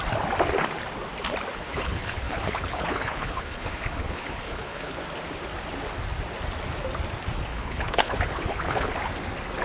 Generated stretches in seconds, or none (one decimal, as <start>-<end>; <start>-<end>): 1.6-5.0; 7.5-8.9